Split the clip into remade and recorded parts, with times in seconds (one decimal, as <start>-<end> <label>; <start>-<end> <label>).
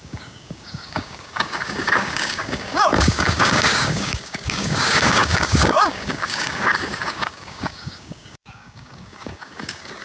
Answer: 0.0-10.0 remade